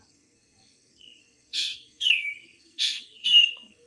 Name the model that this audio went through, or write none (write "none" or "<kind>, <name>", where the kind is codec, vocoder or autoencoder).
codec, SNAC